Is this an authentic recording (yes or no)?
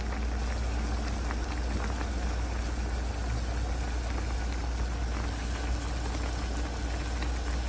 yes